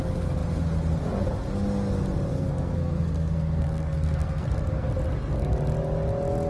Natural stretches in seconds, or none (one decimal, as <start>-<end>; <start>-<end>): 0.0-2.3; 4.9-6.5